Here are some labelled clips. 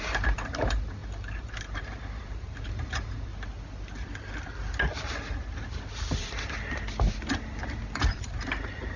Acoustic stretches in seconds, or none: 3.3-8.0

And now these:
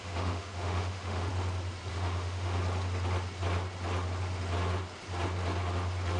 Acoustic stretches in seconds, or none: 1.3-1.9; 2.6-6.2

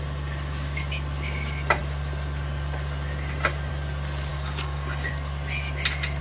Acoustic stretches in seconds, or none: 0.0-4.3; 5.1-6.2

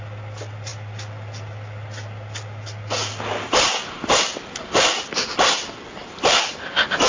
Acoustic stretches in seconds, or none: 0.0-6.0; 6.5-7.1

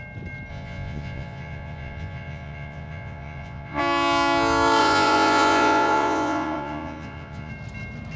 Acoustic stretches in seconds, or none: 0.0-0.5; 3.8-4.8; 7.5-8.2

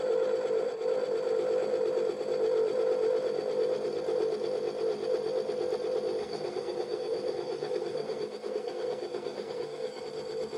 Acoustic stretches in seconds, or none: 0.0-6.2; 10.0-10.6

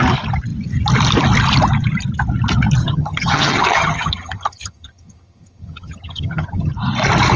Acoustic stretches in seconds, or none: 0.0-2.8; 6.7-7.4